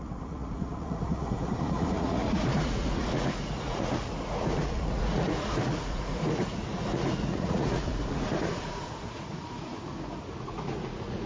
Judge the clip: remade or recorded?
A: remade